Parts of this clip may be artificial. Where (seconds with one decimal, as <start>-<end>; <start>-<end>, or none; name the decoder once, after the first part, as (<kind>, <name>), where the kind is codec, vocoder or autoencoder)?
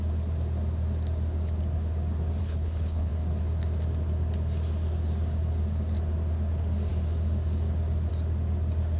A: 2.4-3.1 (codec, HILCodec)